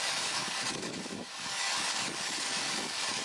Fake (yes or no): yes